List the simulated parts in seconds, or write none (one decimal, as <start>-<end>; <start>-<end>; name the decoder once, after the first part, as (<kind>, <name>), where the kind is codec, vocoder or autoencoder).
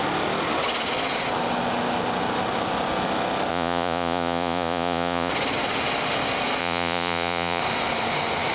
3.5-5.3 (vocoder, Vocos); 6.6-7.6